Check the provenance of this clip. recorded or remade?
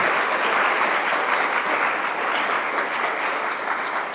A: recorded